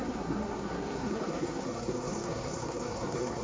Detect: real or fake fake